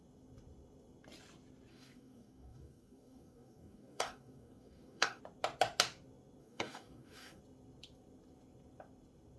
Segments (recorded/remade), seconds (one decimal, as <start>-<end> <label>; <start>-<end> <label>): 0.0-1.7 recorded; 1.7-5.2 remade; 5.2-6.4 recorded; 6.4-7.4 remade; 7.4-9.4 recorded